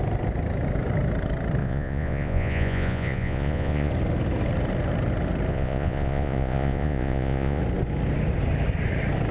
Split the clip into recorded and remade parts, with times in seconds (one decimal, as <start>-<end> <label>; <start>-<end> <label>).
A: 0.0-1.6 recorded; 1.6-3.9 remade; 3.9-5.5 recorded; 5.5-7.6 remade; 7.6-9.3 recorded